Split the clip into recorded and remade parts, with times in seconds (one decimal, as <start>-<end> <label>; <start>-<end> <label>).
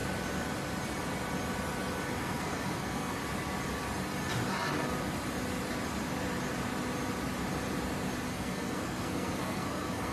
0.0-2.2 recorded; 2.2-3.2 remade; 3.2-8.3 recorded; 8.3-10.1 remade